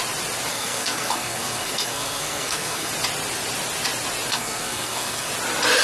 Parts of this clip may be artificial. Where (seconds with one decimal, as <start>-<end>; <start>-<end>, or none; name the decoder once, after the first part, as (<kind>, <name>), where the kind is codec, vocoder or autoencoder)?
0.5-2.9 (codec, SNAC); 4.3-5.3